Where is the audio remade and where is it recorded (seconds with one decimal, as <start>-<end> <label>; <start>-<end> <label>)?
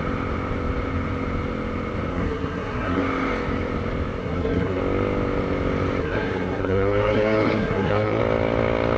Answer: 0.0-2.1 recorded; 2.1-3.0 remade; 3.0-4.2 recorded; 4.2-4.8 remade; 4.8-6.0 recorded; 6.0-8.2 remade; 8.2-9.0 recorded